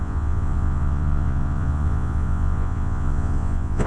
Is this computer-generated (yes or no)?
yes